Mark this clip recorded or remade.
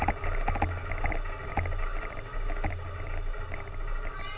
recorded